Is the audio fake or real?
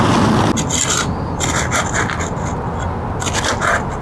real